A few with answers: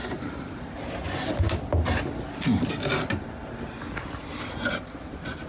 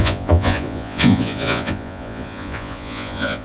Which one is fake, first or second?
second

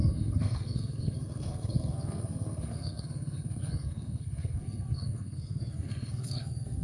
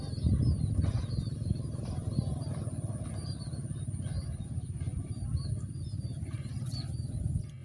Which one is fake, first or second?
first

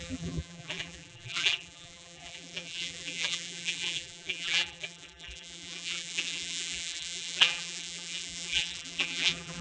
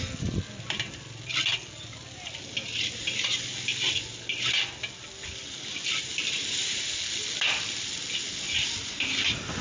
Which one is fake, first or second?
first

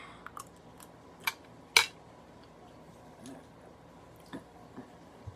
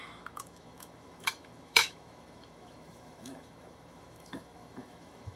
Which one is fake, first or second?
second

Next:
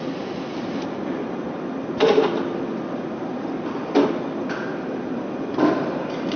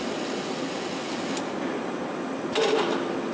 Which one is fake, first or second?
first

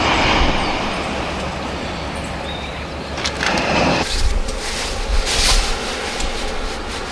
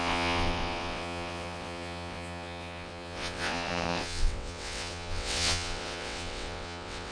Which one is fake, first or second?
second